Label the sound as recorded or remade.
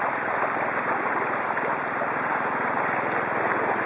recorded